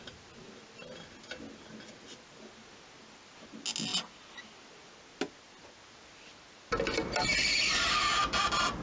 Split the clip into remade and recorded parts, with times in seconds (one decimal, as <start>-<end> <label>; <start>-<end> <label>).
0.0-8.8 recorded